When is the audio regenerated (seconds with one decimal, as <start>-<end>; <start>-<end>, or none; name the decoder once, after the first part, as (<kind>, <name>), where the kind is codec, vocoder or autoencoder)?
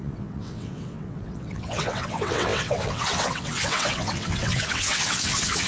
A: 0.0-5.7 (vocoder, WaveNeXt)